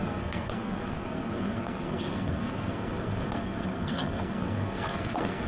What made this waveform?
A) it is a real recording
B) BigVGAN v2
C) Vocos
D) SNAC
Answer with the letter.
D